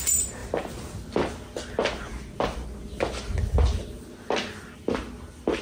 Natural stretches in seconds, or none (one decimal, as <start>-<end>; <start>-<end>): 0.0-0.4; 1.1-5.6